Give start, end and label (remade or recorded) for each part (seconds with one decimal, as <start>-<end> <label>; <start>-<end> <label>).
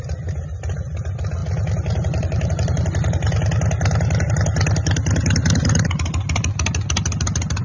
0.0-7.6 recorded